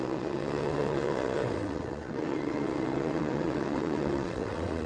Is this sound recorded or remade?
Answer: remade